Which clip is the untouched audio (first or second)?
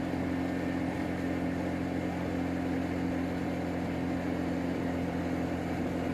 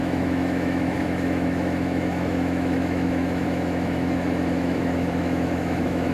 first